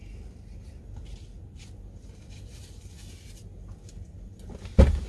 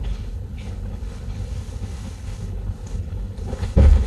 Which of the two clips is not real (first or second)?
second